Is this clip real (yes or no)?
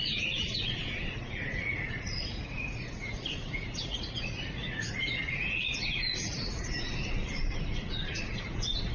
no